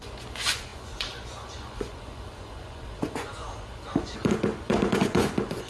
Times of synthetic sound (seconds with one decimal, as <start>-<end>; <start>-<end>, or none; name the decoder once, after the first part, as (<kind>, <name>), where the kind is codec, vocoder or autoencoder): 0.0-5.7 (vocoder, Vocos)